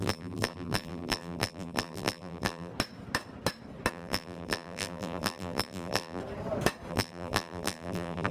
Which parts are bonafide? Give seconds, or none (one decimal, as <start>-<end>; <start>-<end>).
2.7-3.9; 6.2-6.9